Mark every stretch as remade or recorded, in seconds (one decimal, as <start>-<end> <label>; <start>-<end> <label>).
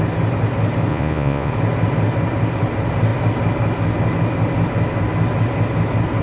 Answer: 0.0-0.9 recorded; 0.9-1.5 remade; 1.5-6.2 recorded